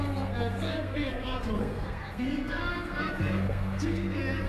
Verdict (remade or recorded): remade